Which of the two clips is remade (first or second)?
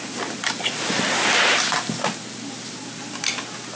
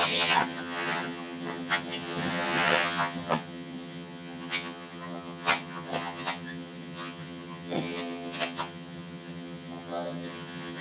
second